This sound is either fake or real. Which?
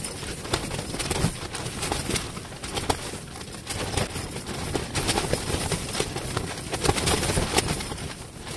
real